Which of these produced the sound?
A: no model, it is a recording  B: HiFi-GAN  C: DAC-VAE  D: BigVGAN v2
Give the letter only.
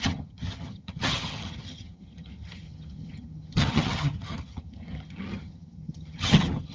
B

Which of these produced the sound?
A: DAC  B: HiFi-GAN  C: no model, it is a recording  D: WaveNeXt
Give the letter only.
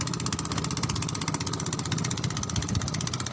C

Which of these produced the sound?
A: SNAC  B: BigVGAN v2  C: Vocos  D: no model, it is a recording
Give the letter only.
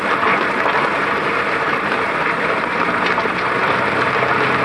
D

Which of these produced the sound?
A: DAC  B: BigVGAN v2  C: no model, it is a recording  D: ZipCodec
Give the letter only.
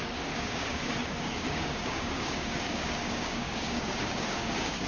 A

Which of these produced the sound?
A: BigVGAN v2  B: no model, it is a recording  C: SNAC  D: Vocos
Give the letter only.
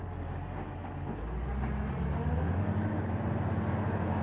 B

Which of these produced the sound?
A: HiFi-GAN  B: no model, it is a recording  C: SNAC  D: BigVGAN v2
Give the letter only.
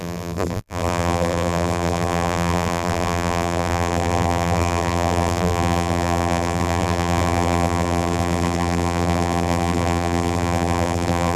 D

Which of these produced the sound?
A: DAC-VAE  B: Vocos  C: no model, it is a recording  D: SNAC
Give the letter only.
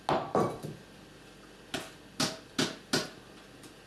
C